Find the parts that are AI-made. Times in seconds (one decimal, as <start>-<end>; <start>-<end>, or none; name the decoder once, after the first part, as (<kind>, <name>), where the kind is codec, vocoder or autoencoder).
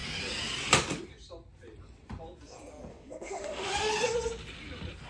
2.9-3.9 (autoencoder, DAC-VAE)